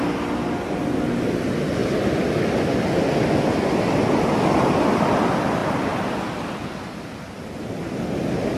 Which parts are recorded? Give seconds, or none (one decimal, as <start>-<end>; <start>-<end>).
0.0-8.6